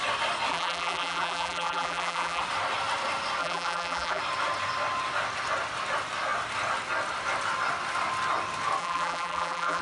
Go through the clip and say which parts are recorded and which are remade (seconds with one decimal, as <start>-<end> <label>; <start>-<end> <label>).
0.0-0.5 recorded; 0.5-2.4 remade; 2.4-3.4 recorded; 3.4-4.2 remade; 4.2-8.8 recorded; 8.8-9.8 remade